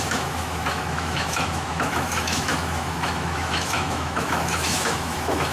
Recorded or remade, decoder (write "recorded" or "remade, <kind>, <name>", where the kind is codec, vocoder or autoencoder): remade, autoencoder, DAC-VAE